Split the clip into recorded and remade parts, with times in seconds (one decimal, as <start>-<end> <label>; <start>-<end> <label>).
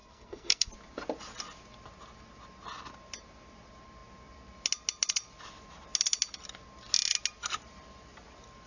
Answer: 0.0-0.7 remade; 0.7-8.7 recorded